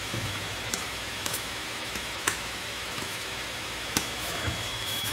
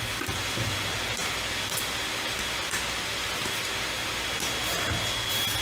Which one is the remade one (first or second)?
first